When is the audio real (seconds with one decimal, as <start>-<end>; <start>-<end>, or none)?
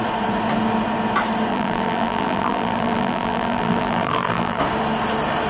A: 0.0-1.5; 4.6-5.5